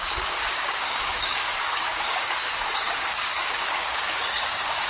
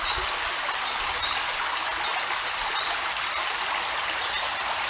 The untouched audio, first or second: second